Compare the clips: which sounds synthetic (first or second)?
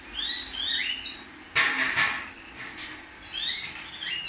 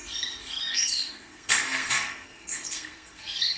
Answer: second